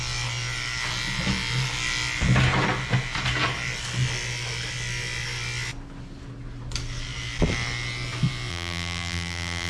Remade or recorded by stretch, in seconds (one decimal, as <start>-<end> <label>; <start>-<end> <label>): 0.0-8.5 recorded; 8.5-9.7 remade